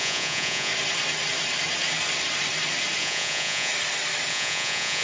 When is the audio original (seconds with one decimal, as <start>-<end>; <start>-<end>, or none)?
0.7-3.0; 3.7-4.3